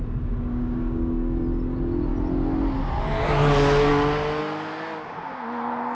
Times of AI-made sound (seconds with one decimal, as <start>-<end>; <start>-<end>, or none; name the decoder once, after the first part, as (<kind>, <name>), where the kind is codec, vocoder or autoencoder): 0.5-1.4 (codec, DAC)